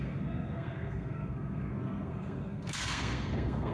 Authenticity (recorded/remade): remade